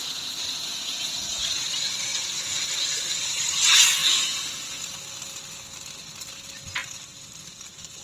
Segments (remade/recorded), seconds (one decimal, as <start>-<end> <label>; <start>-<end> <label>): 0.0-1.4 remade; 1.4-2.1 recorded; 2.1-2.7 remade; 2.7-4.0 recorded; 4.0-4.8 remade; 4.8-8.0 recorded